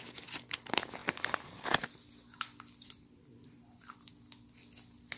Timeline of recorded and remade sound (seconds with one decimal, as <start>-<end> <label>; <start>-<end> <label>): 0.0-1.0 recorded; 1.0-4.1 remade; 4.1-5.2 recorded